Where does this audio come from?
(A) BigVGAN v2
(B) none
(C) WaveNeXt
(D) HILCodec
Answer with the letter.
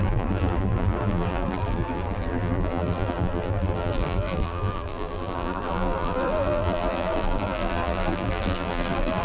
A